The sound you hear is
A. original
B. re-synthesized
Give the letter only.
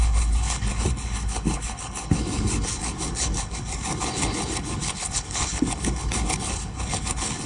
B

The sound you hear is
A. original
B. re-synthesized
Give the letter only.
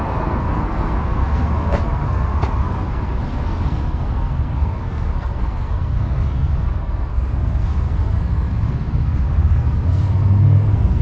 B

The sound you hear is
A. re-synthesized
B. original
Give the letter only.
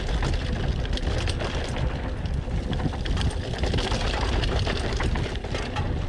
B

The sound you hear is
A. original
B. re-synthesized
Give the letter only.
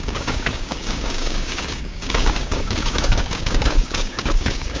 B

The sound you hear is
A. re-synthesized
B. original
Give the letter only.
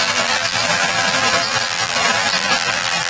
A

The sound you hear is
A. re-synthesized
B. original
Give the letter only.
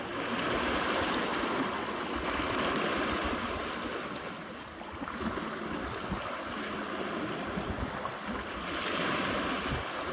B